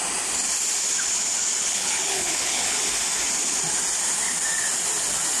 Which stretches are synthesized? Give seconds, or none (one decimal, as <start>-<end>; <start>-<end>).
1.6-2.8